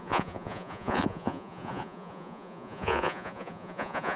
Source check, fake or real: fake